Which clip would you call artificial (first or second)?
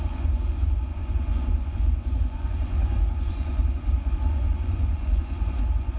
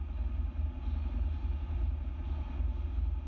first